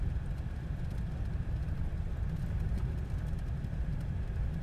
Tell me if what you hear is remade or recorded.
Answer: recorded